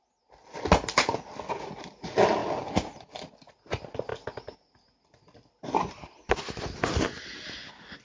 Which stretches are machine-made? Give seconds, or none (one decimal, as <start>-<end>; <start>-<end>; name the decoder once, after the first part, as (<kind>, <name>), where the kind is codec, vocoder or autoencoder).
none